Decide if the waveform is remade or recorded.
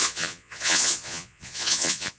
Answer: remade